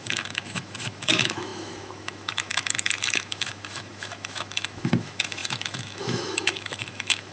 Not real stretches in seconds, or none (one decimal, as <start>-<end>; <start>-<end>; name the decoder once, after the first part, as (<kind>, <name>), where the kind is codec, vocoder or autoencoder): 0.0-7.3 (autoencoder, DAC-VAE)